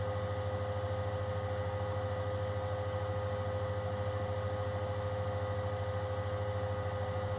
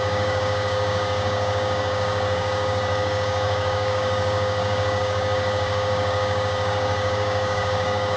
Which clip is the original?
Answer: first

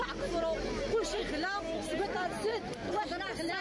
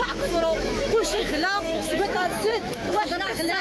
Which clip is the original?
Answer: first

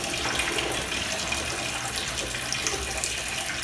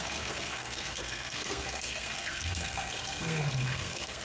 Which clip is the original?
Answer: first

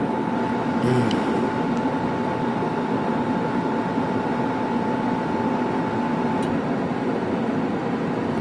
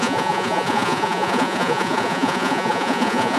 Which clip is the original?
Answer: first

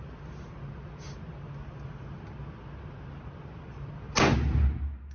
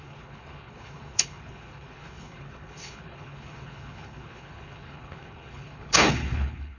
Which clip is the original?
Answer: first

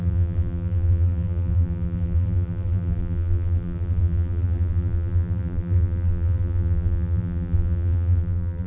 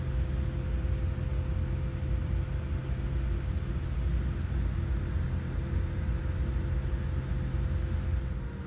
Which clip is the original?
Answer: second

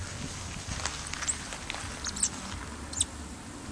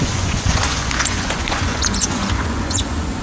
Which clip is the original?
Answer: first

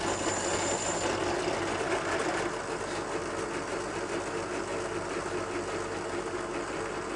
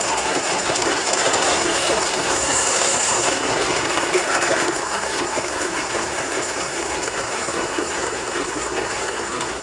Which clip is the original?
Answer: first